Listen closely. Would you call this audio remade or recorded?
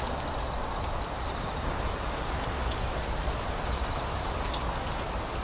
recorded